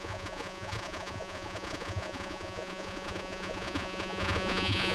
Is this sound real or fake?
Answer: fake